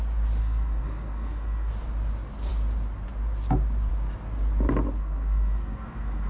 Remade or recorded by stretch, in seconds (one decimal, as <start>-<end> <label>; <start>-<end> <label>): 0.0-0.4 recorded; 0.4-1.7 remade; 1.7-5.0 recorded; 5.0-6.3 remade